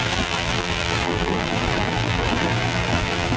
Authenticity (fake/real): fake